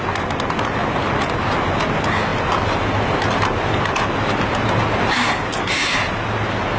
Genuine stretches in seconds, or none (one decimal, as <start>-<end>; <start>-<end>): 0.0-6.8